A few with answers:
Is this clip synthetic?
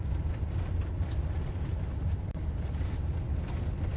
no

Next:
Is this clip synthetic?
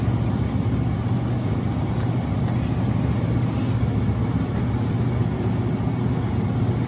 no